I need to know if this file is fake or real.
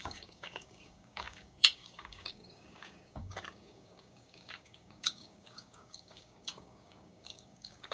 fake